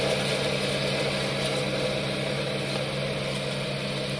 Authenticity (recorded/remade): recorded